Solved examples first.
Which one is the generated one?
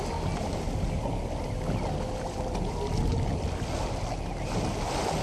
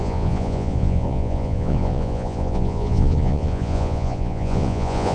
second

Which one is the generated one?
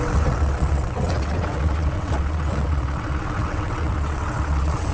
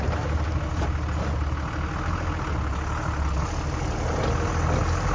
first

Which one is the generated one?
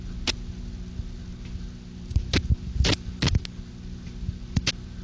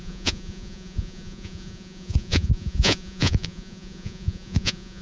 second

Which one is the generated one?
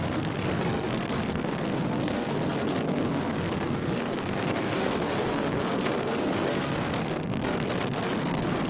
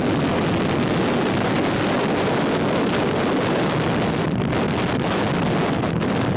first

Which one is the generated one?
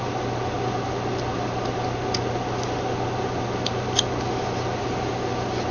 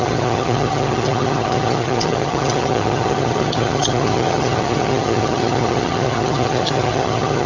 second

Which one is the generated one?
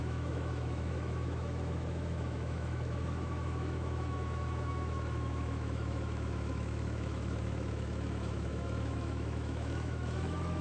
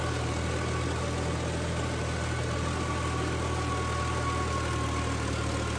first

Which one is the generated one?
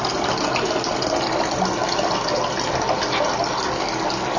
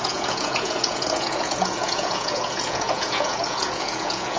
second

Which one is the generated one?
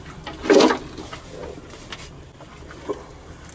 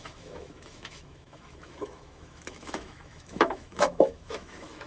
second